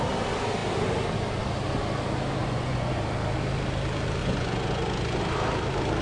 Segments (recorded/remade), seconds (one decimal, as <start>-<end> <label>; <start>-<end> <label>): 0.0-2.4 recorded; 2.4-3.0 remade; 3.0-4.2 recorded; 4.2-5.2 remade; 5.2-6.0 recorded